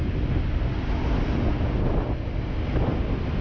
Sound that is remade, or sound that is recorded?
recorded